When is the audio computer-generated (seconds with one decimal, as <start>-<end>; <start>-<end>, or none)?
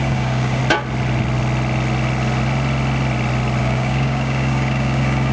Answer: 0.0-0.6; 3.6-5.3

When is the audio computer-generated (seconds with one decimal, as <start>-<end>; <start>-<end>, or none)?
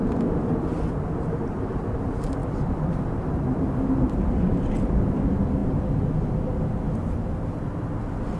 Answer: 0.0-2.4; 3.4-5.6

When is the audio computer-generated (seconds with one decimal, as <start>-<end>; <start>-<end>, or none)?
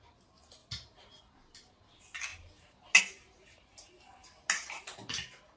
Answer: none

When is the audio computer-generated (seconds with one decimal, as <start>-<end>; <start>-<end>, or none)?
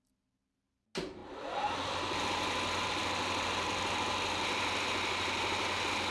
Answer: none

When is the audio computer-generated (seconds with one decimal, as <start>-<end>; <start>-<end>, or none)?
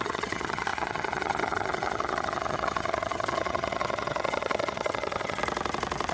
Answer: 0.0-5.4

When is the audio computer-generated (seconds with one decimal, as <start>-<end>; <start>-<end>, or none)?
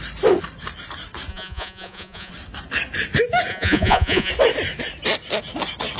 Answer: 1.3-2.3; 3.5-4.3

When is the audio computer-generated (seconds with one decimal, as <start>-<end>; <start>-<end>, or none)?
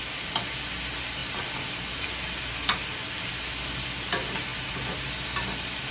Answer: 1.2-2.5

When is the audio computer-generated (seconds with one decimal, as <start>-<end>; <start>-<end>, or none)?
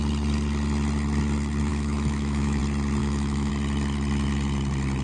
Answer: 1.7-2.6; 3.0-3.5